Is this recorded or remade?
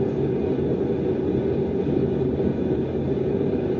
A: recorded